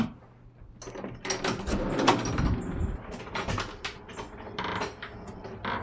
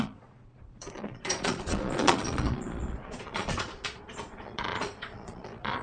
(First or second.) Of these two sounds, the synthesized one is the second